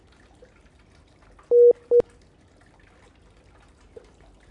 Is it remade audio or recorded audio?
recorded